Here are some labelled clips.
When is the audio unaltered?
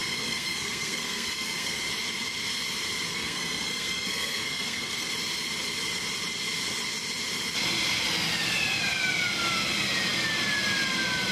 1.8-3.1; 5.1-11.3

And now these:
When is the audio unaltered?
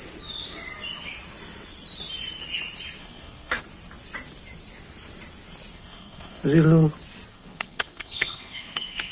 0.0-3.0; 3.6-5.7; 6.4-7.3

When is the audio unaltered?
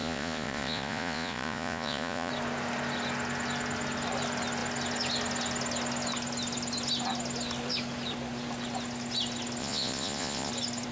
2.3-9.6; 10.5-10.9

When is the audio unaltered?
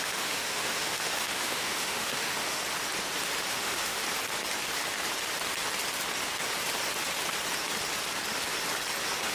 2.6-3.5; 4.0-9.3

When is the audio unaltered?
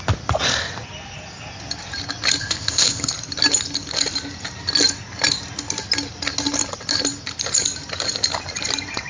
0.0-2.4; 3.1-9.1